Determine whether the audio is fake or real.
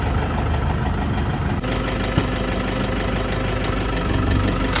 real